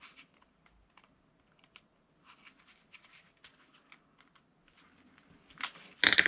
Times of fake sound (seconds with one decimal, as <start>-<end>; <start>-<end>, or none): none